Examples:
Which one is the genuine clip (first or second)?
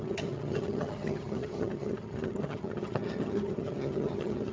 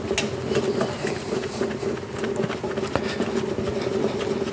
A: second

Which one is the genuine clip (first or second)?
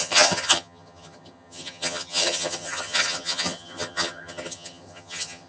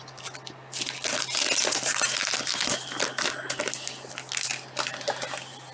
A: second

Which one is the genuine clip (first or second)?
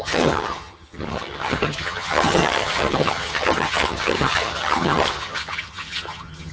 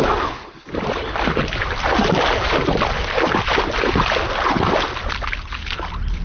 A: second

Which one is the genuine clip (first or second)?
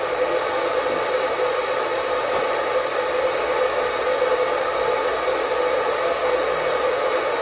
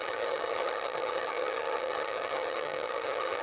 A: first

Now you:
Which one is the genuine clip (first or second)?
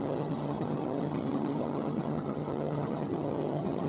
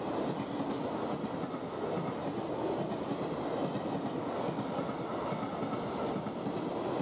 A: second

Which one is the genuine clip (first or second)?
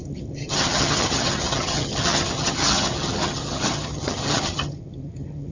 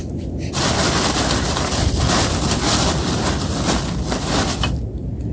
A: second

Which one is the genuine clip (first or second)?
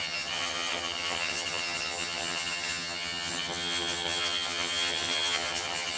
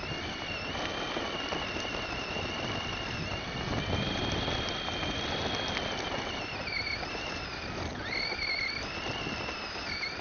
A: second